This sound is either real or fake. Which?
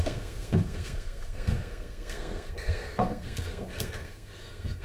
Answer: fake